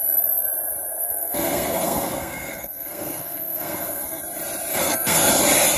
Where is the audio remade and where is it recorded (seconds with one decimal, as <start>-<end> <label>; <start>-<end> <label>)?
0.0-1.0 recorded; 1.0-4.2 remade; 4.2-4.7 recorded; 4.7-5.3 remade; 5.3-5.8 recorded

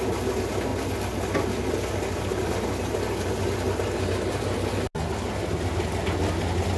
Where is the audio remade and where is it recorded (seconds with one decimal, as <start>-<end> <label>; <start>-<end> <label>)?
0.0-6.8 recorded